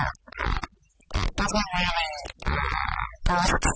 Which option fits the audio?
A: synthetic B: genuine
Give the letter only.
B